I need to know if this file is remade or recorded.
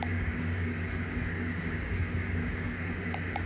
remade